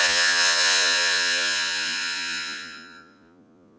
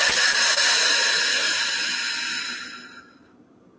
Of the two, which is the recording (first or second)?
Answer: second